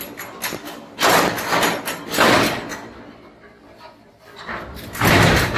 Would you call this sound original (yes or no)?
yes